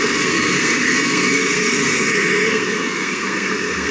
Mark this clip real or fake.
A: fake